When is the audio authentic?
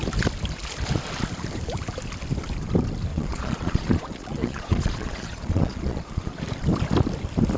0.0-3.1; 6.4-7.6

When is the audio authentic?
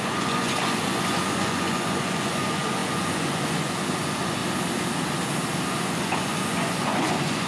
4.4-5.7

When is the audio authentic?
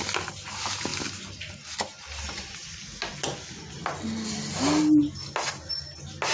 0.0-6.3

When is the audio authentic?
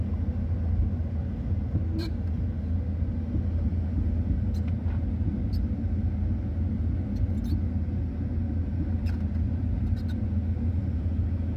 0.0-11.6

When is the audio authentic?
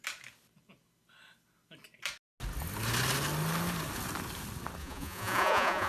0.0-4.8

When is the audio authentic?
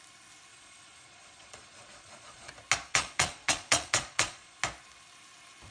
0.0-0.5; 2.5-2.9; 4.6-5.7